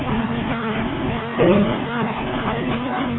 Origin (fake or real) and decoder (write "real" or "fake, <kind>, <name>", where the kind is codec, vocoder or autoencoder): fake, codec, SNAC